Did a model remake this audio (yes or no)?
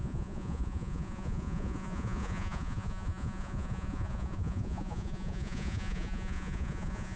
yes